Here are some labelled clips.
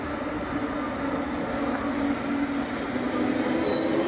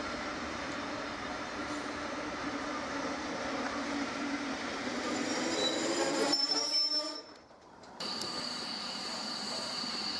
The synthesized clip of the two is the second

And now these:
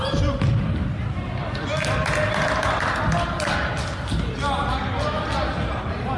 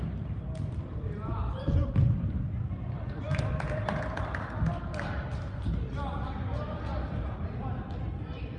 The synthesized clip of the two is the second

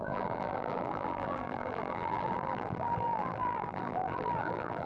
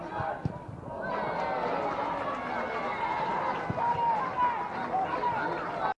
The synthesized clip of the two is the first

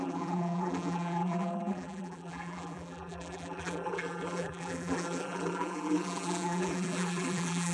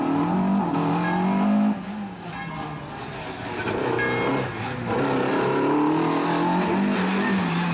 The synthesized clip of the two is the first